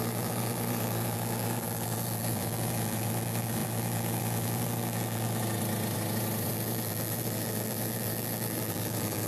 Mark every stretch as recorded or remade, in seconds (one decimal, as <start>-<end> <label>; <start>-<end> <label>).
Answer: 0.0-5.4 remade; 5.4-6.5 recorded; 6.5-9.3 remade